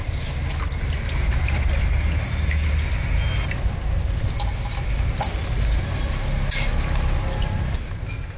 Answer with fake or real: real